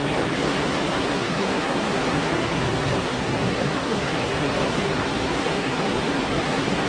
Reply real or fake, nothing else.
fake